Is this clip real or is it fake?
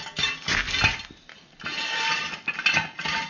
real